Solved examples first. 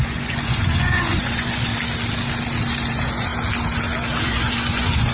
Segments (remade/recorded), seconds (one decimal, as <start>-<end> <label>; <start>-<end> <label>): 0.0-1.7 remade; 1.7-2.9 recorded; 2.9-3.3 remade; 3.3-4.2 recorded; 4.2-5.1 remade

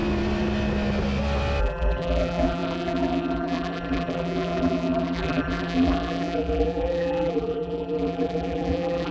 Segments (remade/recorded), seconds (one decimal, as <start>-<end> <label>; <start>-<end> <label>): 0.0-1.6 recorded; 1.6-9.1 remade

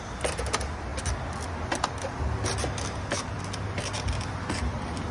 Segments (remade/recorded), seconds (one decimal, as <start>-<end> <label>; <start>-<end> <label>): 0.0-5.1 recorded